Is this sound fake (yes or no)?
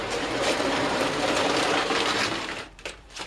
yes